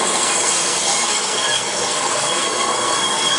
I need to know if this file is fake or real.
fake